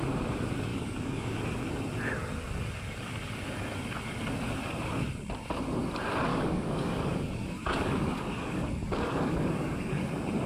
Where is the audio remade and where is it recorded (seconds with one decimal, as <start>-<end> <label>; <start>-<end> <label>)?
0.0-0.7 recorded; 0.7-1.4 remade; 1.4-6.3 recorded; 6.3-10.0 remade; 10.0-10.5 recorded